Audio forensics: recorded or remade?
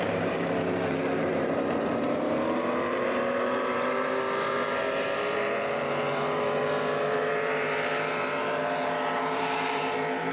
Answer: remade